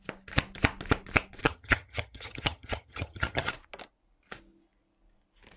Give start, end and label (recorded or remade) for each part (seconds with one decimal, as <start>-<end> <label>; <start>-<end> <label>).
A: 0.0-1.4 recorded; 1.4-3.5 remade; 3.5-5.6 recorded